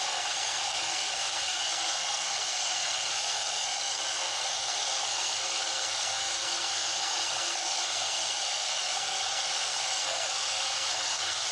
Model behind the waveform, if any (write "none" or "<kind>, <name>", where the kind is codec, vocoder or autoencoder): codec, SNAC